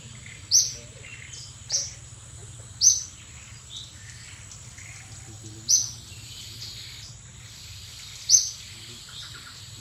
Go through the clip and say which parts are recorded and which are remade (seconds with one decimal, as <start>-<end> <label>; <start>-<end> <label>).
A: 0.0-1.1 recorded; 1.1-1.8 remade; 1.8-9.8 recorded

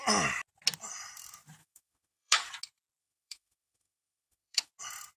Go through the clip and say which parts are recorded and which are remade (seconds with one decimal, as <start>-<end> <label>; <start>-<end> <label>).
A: 0.0-1.6 recorded; 1.6-2.5 remade; 2.5-3.0 recorded; 3.0-4.7 remade; 4.7-5.2 recorded

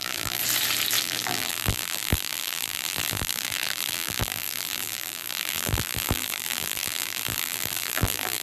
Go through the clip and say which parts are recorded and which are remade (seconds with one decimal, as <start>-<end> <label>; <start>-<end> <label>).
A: 0.0-0.4 remade; 0.4-1.0 recorded; 1.0-8.4 remade

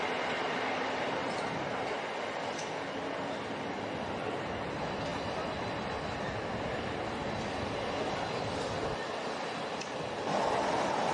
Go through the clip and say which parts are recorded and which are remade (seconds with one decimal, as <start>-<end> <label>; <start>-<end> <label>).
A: 0.0-11.1 recorded

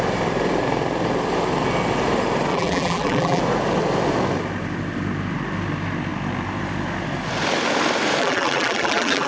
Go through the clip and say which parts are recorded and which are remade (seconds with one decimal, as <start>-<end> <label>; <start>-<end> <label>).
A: 0.0-2.5 recorded; 2.5-3.4 remade; 3.4-8.2 recorded; 8.2-9.3 remade

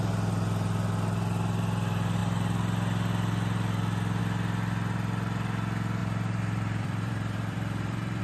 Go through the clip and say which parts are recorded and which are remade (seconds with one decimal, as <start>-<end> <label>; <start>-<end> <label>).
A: 0.0-6.0 recorded; 6.0-8.2 remade

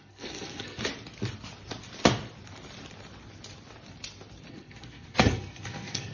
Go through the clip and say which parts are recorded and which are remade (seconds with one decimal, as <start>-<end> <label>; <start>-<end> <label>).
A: 0.0-0.8 remade; 0.8-4.5 recorded; 4.5-6.1 remade